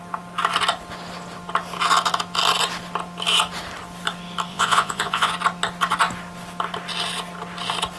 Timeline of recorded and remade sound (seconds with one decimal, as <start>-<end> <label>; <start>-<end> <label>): 0.0-4.5 recorded; 4.5-5.3 remade; 5.3-8.0 recorded